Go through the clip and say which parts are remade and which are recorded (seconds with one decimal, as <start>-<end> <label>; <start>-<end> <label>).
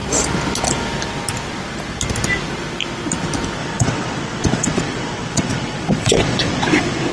0.0-3.6 recorded; 3.6-7.1 remade